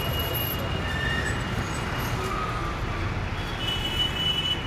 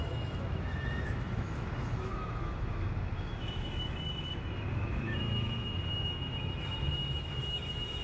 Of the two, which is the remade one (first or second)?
second